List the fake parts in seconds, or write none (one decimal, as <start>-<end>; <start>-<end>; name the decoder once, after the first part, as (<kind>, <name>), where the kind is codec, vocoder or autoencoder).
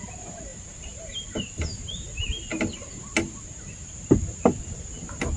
0.5-2.0 (vocoder, BigVGAN v2)